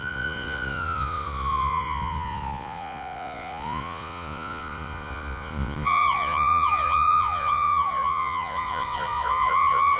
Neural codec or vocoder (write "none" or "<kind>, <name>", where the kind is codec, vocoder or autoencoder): vocoder, Vocos